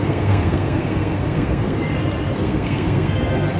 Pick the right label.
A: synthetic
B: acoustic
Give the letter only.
A